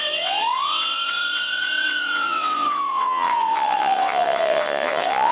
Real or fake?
fake